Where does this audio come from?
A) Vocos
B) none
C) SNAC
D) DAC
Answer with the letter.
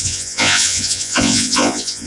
A